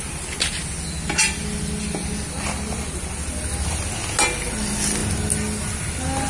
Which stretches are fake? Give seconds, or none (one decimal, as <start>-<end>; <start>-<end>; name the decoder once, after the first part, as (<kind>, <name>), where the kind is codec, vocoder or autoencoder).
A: none